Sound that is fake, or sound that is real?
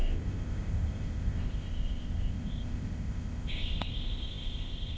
fake